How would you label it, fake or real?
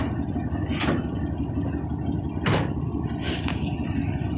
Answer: real